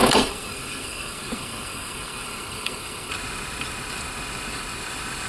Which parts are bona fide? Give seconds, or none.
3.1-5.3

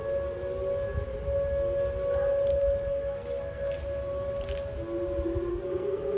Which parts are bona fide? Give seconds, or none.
0.0-2.5; 3.7-5.5

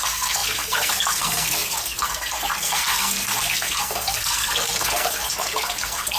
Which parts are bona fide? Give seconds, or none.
none